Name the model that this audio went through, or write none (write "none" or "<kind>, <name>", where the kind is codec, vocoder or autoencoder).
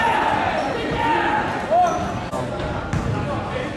none